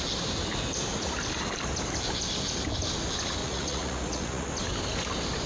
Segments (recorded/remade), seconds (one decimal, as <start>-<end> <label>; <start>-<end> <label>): 0.0-3.4 recorded; 3.4-4.5 remade; 4.5-5.5 recorded